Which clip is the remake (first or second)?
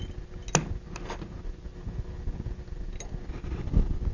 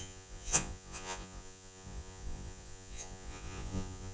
second